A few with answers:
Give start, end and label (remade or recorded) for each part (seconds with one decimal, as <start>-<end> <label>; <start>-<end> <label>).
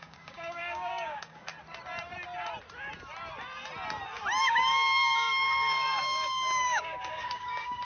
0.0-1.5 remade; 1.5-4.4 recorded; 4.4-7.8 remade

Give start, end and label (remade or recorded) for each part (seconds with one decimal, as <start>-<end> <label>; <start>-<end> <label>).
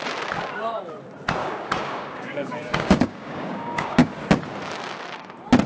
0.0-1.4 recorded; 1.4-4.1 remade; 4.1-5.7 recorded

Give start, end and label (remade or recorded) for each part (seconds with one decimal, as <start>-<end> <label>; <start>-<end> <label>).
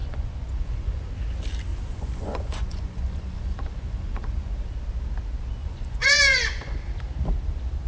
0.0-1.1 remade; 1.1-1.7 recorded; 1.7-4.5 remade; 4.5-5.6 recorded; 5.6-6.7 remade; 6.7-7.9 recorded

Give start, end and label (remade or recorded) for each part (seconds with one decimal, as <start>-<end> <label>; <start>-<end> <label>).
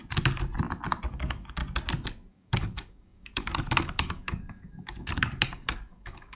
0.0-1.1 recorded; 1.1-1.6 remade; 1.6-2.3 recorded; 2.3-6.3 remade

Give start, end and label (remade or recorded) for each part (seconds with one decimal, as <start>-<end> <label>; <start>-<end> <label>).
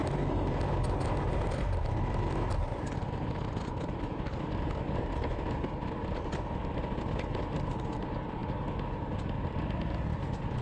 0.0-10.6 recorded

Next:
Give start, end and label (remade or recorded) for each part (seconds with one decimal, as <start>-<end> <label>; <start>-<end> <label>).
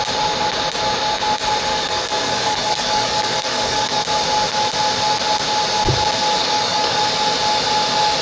0.0-1.7 recorded; 1.7-4.0 remade; 4.0-6.4 recorded; 6.4-7.0 remade; 7.0-8.2 recorded